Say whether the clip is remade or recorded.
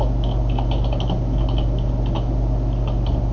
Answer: recorded